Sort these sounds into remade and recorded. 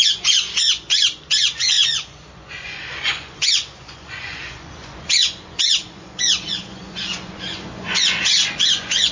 remade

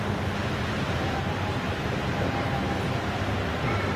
recorded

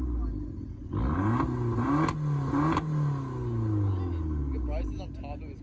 recorded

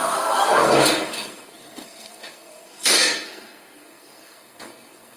remade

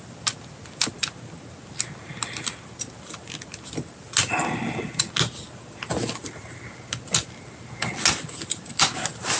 recorded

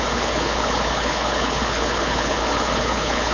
remade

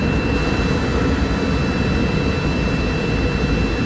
recorded